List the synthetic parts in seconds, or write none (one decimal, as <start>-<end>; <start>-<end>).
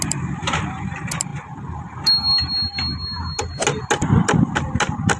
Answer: none